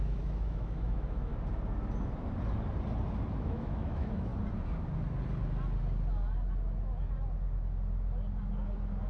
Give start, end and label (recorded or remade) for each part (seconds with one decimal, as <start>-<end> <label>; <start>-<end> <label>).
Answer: 0.0-1.3 remade; 1.3-3.4 recorded; 3.4-4.3 remade; 4.3-9.1 recorded